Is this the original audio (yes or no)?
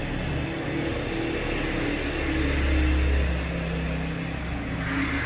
yes